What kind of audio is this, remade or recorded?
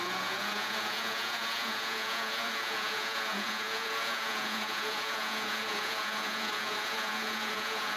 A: remade